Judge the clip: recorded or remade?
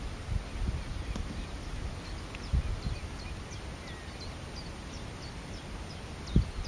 recorded